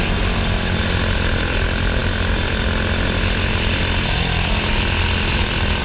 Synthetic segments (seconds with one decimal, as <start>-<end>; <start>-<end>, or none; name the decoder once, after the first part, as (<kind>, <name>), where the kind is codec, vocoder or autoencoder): none